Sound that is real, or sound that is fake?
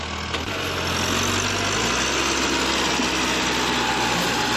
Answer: real